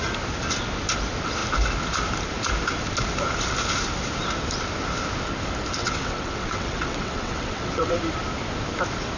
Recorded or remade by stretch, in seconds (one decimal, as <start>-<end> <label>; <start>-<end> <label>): 0.0-5.8 recorded; 5.8-8.0 remade; 8.0-9.2 recorded